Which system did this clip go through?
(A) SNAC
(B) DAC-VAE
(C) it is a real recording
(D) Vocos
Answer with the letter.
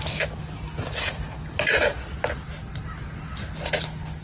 C